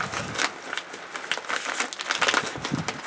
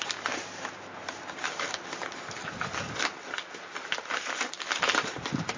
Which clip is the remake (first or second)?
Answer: second